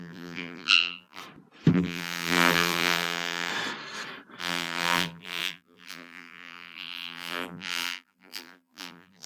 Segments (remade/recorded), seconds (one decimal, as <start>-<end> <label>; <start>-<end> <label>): 0.0-1.2 remade; 1.2-1.7 recorded; 1.7-3.5 remade; 3.5-4.4 recorded; 4.4-9.3 remade